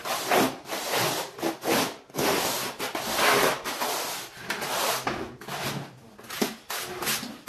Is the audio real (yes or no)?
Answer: yes